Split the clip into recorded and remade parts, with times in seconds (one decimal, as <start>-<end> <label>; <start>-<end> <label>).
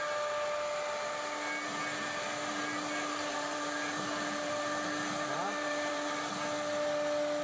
0.0-3.3 recorded; 3.3-6.3 remade; 6.3-7.4 recorded